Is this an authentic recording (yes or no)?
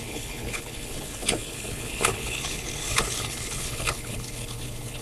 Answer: no